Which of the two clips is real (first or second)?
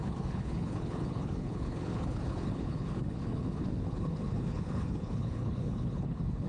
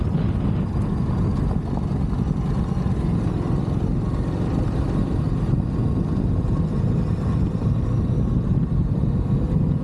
second